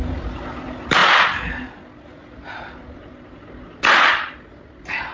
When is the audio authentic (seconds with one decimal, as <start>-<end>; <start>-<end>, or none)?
0.0-5.1